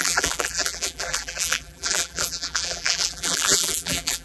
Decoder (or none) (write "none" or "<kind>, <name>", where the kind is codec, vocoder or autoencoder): vocoder, BigVGAN v2